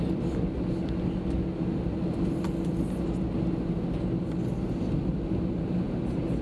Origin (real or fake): real